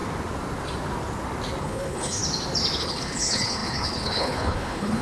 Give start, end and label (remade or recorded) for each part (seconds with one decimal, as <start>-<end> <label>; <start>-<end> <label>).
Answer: 0.0-1.6 recorded; 1.6-2.2 remade; 2.2-2.8 recorded; 2.8-5.0 remade